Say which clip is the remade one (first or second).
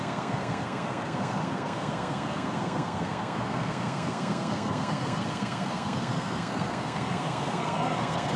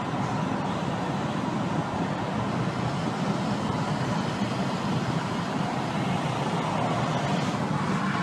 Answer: first